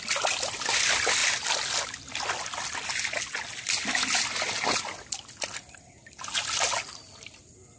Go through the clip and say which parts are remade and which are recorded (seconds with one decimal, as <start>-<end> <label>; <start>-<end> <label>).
0.0-7.8 recorded